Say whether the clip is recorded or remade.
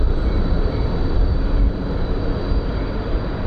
remade